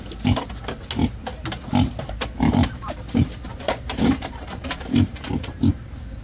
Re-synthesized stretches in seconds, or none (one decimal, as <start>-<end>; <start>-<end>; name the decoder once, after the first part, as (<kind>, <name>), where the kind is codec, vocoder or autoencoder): 3.5-5.7 (vocoder, BigVGAN v2)